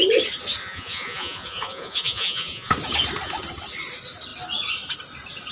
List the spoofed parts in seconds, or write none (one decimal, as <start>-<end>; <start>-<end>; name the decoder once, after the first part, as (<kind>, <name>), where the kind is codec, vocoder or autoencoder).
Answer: 0.6-2.7 (vocoder, Vocos)

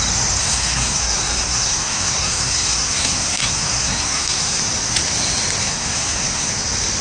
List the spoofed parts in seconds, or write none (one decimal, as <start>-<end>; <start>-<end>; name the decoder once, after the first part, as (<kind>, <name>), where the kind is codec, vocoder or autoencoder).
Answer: 0.4-4.6 (codec, SNAC); 5.6-6.5

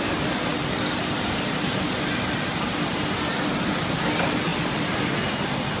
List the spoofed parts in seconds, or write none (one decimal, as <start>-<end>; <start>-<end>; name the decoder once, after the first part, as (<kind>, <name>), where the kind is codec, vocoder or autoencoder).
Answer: none

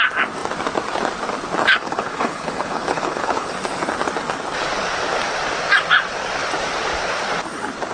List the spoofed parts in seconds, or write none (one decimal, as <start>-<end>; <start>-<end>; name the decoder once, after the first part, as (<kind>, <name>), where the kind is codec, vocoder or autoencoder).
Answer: 1.6-3.5 (codec, HILCodec)

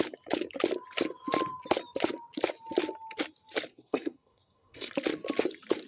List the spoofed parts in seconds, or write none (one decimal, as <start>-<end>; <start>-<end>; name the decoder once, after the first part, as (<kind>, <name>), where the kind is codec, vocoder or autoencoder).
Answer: 3.7-4.9 (codec, SNAC)

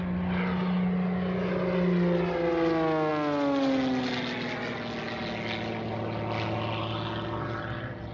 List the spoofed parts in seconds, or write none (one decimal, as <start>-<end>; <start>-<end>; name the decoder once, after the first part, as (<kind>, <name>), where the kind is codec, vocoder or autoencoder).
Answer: none

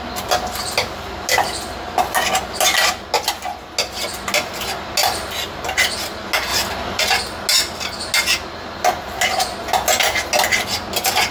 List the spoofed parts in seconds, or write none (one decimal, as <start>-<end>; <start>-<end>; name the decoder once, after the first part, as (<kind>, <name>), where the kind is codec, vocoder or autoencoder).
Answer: none

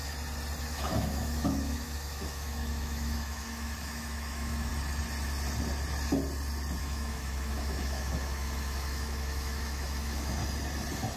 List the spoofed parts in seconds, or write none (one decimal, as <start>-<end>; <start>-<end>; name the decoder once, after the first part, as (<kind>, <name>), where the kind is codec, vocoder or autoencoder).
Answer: 0.6-4.7 (autoencoder, DAC-VAE); 6.8-10.4